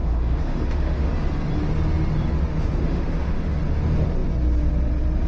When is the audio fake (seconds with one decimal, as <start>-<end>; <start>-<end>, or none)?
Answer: 0.0-1.1; 2.5-3.5